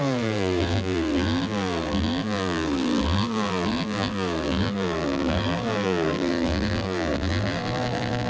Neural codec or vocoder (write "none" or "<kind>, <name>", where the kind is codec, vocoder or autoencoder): vocoder, BigVGAN v2